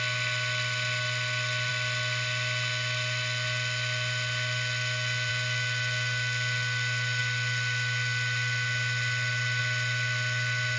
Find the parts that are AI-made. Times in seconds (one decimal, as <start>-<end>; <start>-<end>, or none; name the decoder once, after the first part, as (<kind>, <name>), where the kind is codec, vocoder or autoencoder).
none